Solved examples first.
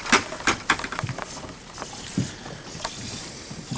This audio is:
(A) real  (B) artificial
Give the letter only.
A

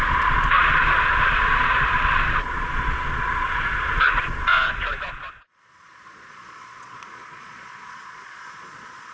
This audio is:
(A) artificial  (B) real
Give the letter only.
A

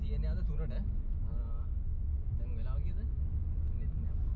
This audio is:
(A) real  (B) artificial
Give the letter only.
A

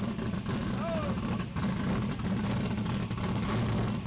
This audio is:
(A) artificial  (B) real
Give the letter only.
B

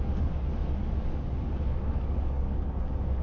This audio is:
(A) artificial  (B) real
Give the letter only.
A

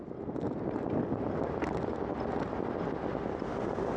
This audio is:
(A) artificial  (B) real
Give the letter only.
B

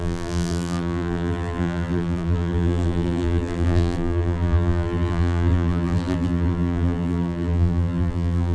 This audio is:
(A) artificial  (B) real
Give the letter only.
A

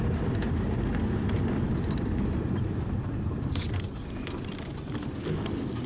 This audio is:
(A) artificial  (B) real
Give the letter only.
B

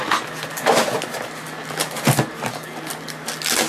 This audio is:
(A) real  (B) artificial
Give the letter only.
B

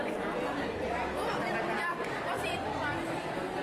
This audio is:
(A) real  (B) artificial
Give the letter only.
A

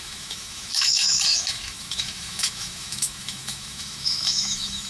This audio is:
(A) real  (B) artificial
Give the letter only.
B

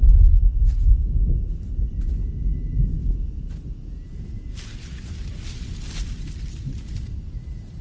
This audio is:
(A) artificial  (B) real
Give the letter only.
B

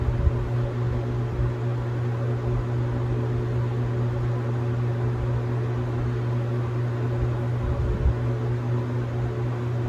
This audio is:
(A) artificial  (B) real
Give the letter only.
B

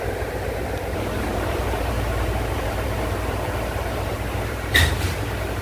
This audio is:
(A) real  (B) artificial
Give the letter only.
B